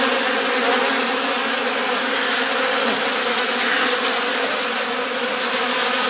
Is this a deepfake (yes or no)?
no